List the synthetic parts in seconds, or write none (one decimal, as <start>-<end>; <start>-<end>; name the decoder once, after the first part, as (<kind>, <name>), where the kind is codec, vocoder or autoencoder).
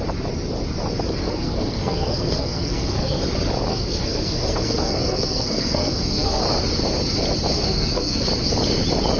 1.2-3.2 (codec, SNAC); 3.7-6.4; 7.5-8.2